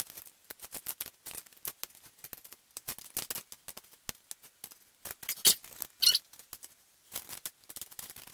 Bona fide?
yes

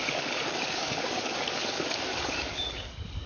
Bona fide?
no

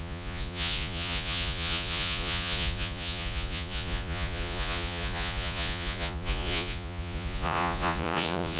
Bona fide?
no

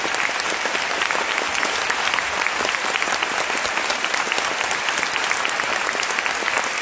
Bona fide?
yes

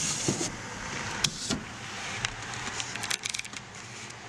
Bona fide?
yes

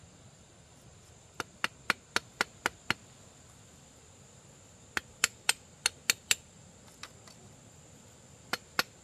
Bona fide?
yes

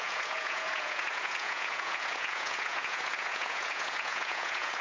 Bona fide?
no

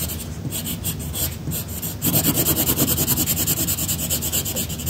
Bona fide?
yes